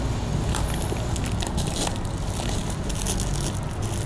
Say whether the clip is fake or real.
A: real